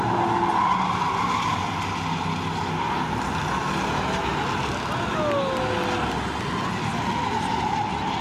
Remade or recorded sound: recorded